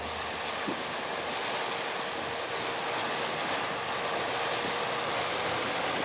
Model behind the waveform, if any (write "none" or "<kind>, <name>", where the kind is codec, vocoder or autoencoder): none